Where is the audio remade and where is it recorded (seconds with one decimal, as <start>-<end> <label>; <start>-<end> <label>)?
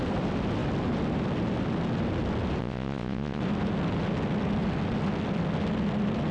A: 0.0-2.6 recorded; 2.6-3.4 remade; 3.4-6.3 recorded